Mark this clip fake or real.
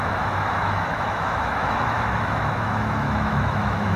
fake